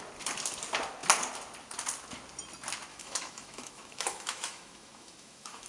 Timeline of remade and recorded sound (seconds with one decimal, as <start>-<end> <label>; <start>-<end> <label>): 0.0-2.9 recorded; 2.9-5.7 remade